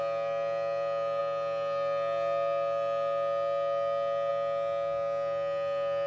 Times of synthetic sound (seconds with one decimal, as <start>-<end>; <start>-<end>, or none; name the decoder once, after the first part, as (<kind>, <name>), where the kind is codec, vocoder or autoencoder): none